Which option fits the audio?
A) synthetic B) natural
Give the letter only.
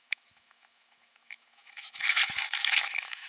A